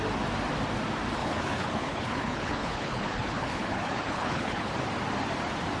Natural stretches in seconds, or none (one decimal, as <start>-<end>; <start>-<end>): 0.0-1.2; 4.7-5.8